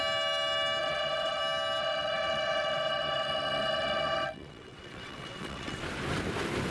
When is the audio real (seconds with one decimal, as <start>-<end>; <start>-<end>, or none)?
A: 0.0-0.8; 1.4-1.8; 5.8-6.7